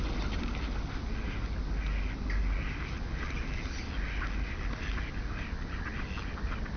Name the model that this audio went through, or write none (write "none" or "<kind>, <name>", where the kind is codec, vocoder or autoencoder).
none